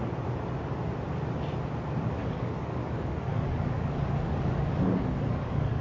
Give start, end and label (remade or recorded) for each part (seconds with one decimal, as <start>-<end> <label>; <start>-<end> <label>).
0.0-2.2 recorded; 2.2-5.8 remade